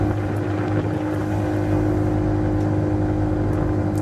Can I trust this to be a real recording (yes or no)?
yes